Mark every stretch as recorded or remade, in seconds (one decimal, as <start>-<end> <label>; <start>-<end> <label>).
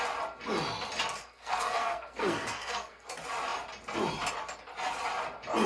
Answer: 0.0-1.2 recorded; 1.2-3.1 remade; 3.1-5.7 recorded